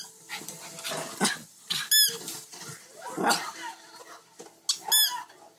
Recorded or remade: recorded